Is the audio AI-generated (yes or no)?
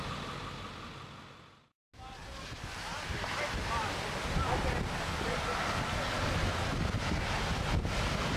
no